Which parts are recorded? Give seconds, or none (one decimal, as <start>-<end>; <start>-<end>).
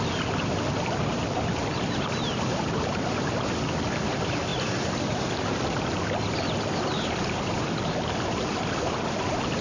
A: 0.0-9.6